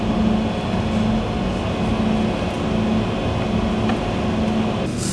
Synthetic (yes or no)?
no